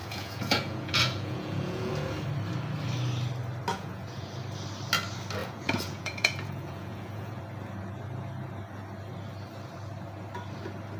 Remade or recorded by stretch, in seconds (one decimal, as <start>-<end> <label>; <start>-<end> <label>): 0.0-1.9 remade; 1.9-3.7 recorded; 3.7-4.3 remade; 4.3-5.4 recorded; 5.4-7.4 remade; 7.4-11.0 recorded